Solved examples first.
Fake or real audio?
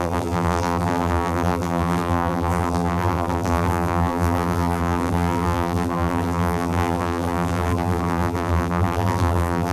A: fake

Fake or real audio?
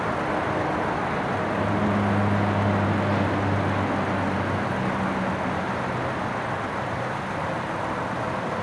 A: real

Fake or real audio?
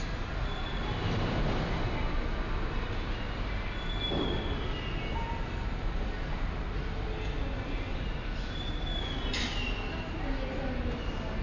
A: real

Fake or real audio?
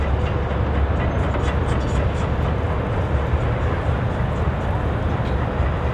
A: real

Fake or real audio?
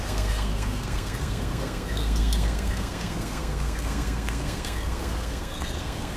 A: fake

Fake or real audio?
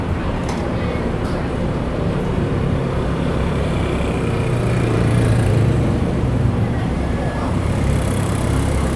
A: fake